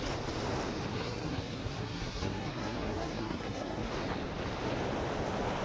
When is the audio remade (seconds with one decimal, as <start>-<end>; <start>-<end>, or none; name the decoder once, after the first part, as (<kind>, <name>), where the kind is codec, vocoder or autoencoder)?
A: 0.9-3.9 (codec, SNAC)